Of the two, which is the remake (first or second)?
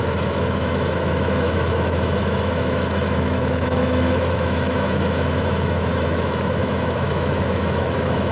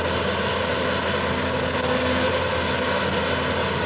first